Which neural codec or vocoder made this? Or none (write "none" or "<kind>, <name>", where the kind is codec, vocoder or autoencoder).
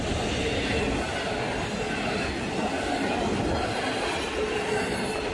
none